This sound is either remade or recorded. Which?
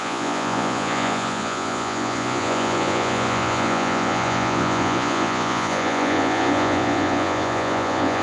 remade